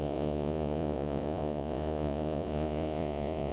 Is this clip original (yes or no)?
no